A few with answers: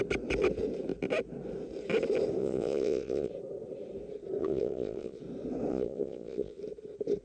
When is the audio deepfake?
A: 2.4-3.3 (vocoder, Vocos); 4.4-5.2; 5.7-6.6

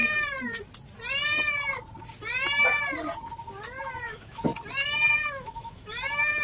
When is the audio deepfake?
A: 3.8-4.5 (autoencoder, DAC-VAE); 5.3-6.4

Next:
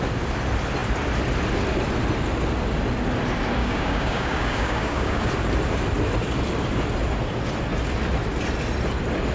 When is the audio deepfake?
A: 3.6-5.3 (codec, DAC)

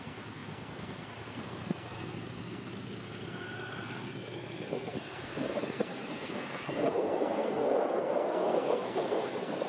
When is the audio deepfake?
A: 0.0-9.7 (codec, SNAC)

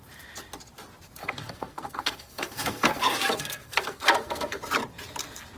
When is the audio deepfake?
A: 1.2-4.6 (codec, SNAC)

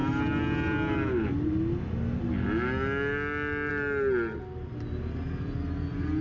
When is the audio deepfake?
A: none

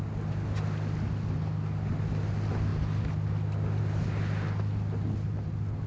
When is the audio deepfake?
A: none

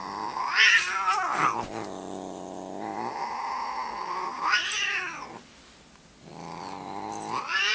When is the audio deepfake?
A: none